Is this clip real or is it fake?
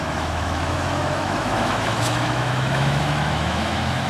fake